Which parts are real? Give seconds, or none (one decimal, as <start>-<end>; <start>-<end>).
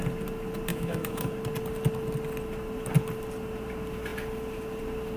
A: 0.0-0.7; 1.3-5.2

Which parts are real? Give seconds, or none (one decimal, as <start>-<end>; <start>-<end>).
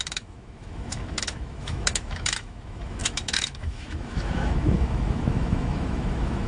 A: none